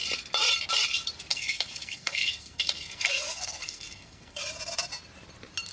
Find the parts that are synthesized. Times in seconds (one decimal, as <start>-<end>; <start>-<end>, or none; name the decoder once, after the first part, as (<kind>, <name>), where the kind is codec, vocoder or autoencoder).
1.3-4.4 (codec, SNAC)